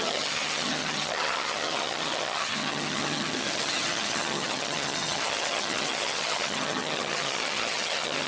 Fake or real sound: fake